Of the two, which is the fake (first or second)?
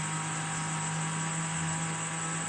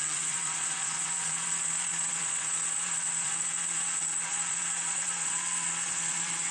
second